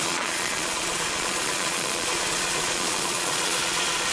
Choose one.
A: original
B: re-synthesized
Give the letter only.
B